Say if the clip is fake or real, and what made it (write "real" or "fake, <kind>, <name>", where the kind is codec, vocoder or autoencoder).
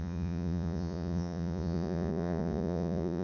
fake, vocoder, Vocos